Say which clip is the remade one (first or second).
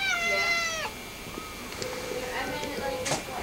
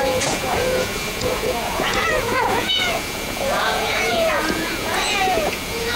second